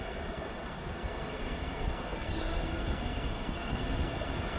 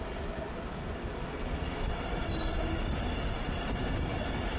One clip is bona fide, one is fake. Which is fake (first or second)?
first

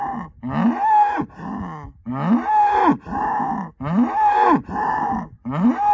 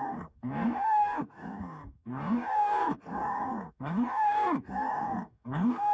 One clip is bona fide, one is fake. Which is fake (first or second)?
second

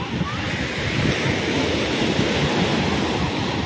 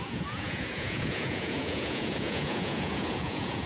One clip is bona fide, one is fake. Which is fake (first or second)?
second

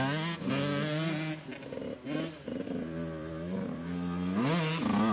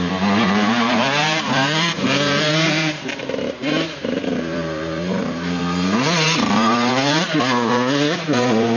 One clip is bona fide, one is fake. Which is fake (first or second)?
second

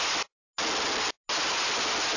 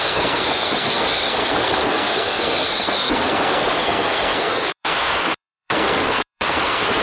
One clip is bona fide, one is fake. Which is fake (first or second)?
second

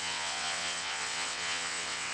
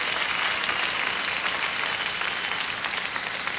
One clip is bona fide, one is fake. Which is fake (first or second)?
first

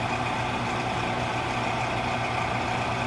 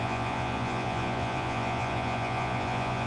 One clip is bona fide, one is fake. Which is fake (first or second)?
second